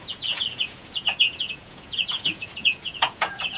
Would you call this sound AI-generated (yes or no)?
yes